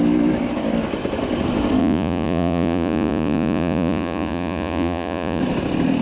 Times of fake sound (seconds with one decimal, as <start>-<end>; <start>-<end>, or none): 1.8-5.4